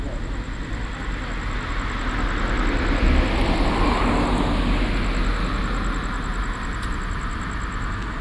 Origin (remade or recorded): recorded